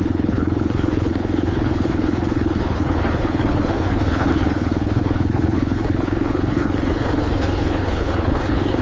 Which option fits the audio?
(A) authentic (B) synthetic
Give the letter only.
B